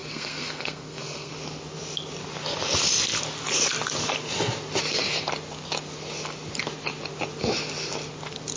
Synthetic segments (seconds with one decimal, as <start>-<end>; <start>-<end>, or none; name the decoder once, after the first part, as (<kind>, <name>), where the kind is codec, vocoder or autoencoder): 0.0-1.3 (codec, SNAC)